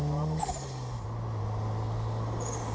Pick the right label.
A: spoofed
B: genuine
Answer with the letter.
B